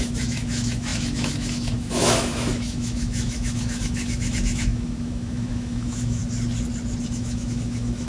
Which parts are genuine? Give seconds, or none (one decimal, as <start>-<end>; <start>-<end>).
6.2-7.1

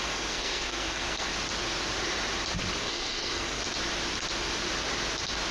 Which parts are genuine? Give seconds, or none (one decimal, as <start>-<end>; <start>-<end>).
1.3-2.8; 3.6-5.5

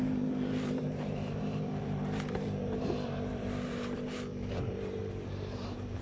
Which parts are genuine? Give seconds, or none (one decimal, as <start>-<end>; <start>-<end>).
none

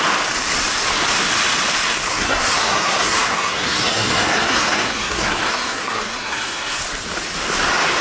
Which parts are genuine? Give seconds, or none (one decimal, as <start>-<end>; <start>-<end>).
0.0-2.1; 6.8-8.0

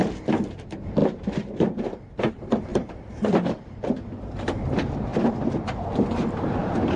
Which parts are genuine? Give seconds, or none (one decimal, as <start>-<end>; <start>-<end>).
none